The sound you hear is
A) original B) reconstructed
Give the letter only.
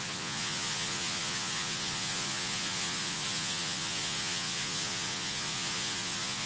B